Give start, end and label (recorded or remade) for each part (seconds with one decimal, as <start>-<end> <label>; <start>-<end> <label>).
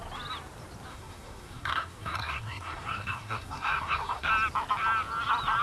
0.0-0.9 recorded; 0.9-4.3 remade; 4.3-5.6 recorded